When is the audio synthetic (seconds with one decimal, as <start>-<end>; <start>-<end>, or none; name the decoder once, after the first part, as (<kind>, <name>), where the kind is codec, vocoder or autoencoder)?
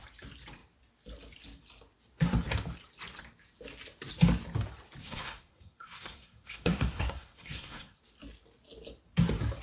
5.0-8.0 (codec, SNAC)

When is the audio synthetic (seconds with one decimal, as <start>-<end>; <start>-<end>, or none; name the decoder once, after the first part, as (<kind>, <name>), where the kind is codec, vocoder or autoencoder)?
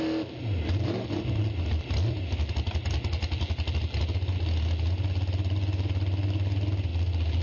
none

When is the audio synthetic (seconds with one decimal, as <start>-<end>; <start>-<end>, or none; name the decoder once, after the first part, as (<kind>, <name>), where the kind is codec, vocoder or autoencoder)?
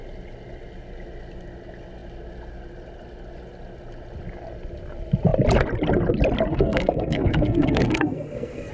6.5-8.7 (codec, SNAC)